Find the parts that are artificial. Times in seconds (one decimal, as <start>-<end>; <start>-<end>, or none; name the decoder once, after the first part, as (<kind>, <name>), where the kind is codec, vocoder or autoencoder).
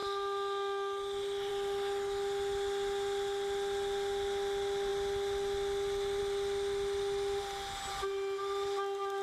none